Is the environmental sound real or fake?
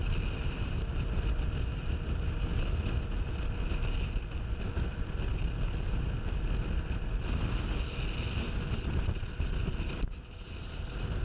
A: real